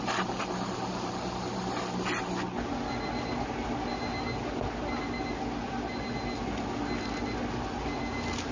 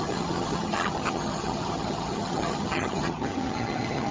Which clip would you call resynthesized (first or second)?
second